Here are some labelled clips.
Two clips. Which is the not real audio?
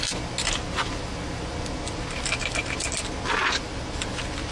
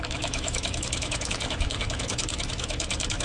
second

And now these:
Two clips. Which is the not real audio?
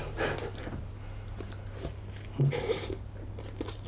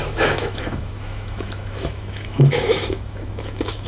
second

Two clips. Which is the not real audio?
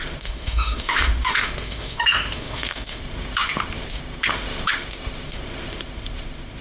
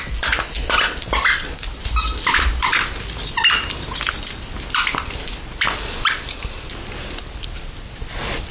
first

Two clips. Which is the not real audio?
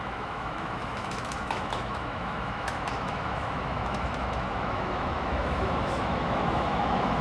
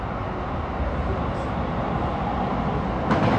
first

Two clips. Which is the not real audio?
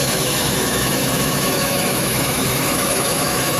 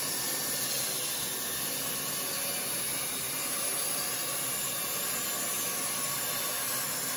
first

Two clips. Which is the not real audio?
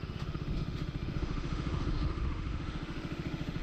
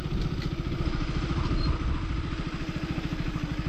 first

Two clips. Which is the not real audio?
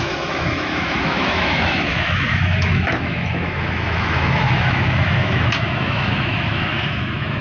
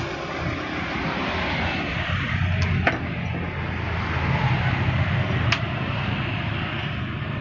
first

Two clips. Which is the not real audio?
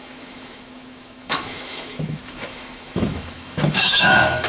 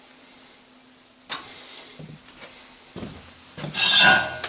first